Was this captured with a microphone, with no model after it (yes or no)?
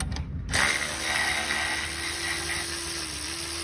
yes